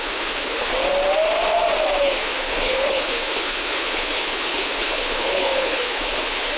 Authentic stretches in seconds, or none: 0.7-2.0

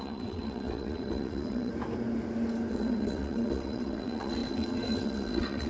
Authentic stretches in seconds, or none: 1.7-2.7

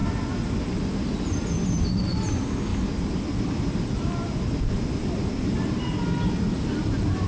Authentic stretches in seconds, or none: 0.0-7.3

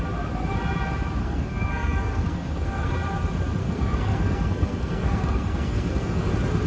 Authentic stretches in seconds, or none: 0.0-1.2; 2.9-3.6; 6.3-6.7

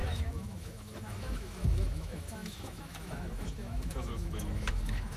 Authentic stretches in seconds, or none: none

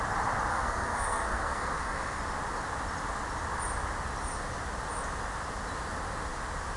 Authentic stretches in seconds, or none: 0.0-0.5; 2.2-6.8